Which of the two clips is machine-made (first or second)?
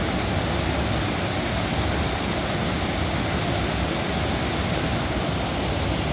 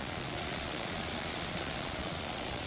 second